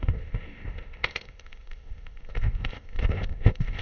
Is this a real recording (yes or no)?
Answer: no